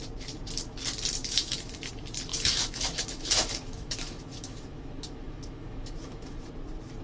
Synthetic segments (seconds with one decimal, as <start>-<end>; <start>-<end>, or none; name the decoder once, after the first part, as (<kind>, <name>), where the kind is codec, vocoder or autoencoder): 1.2-1.8 (autoencoder, DAC-VAE); 2.3-6.5